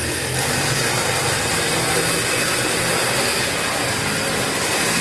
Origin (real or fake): real